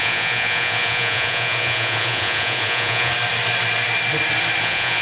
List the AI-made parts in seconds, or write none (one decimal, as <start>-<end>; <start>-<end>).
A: 0.0-3.1; 4.6-5.0